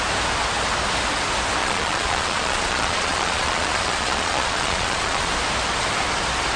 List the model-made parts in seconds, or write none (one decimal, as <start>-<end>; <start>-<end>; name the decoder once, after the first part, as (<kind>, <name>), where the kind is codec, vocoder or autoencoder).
1.6-5.3 (vocoder, Vocos)